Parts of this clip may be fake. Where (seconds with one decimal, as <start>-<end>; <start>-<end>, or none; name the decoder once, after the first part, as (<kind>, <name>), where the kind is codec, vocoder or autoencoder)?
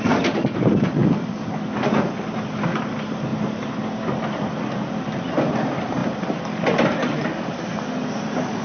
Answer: none